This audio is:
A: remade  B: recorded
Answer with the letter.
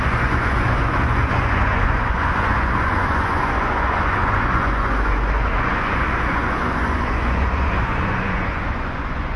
A